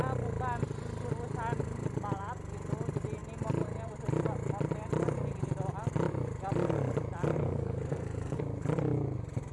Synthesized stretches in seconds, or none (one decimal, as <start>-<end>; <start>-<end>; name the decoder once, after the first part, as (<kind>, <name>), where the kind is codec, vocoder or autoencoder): 7.4-8.4 (codec, SNAC)